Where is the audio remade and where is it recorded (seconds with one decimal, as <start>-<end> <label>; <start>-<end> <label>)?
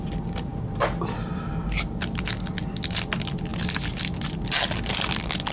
0.0-5.5 recorded